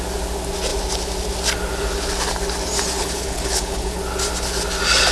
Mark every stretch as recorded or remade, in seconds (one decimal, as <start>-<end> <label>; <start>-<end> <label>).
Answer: 0.0-3.0 recorded; 3.0-4.0 remade; 4.0-5.1 recorded